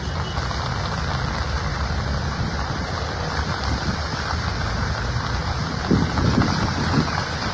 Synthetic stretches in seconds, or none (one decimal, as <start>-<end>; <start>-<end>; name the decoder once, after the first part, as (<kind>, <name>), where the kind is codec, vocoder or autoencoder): 1.7-3.0 (vocoder, BigVGAN v2); 5.4-7.5